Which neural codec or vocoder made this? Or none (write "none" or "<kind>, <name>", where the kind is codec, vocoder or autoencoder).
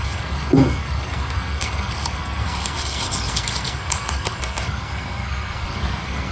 codec, SNAC